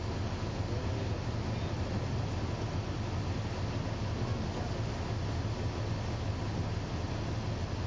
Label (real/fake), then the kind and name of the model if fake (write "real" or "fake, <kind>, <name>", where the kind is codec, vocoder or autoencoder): real